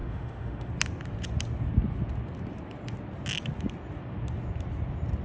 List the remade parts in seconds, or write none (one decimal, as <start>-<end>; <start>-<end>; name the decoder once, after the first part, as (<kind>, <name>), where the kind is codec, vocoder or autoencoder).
0.0-0.7 (autoencoder, DAC-VAE)